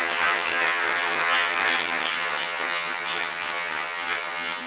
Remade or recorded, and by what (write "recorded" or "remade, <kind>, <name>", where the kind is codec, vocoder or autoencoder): remade, vocoder, HiFi-GAN